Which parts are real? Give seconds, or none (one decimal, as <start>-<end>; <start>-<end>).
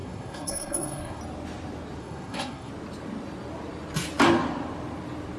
1.2-2.0; 2.7-5.4